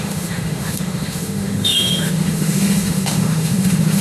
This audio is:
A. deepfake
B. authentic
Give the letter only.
A